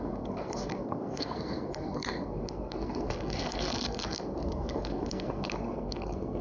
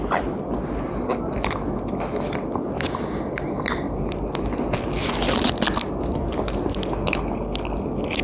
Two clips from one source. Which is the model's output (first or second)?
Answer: first